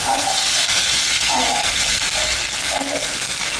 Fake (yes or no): yes